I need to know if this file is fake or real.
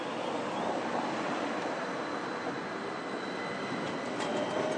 real